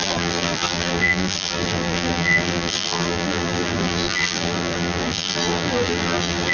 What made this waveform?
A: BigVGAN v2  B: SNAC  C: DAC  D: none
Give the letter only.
A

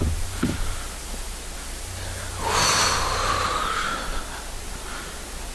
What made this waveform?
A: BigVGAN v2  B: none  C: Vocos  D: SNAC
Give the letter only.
B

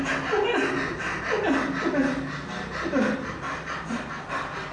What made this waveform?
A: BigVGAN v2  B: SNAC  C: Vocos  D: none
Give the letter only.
D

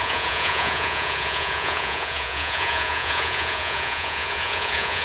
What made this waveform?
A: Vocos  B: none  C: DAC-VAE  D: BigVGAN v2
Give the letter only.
A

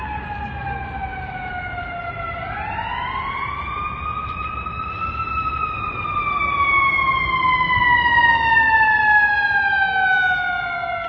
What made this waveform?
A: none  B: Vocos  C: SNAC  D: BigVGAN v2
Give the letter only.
A